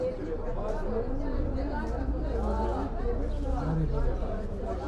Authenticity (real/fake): real